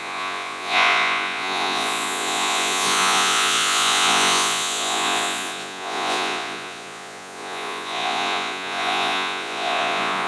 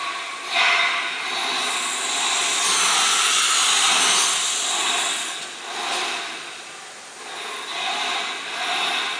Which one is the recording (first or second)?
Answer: second